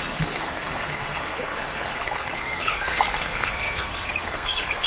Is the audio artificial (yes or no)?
yes